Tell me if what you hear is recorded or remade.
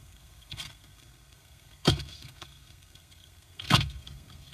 remade